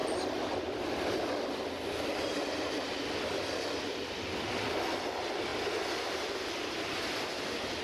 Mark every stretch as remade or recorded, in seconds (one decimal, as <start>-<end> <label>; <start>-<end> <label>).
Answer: 0.0-5.5 remade; 5.5-7.2 recorded; 7.2-7.8 remade